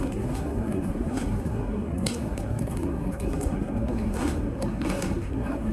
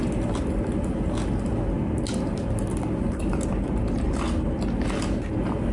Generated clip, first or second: first